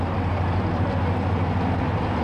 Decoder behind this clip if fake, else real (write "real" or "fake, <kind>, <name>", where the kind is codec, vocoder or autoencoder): real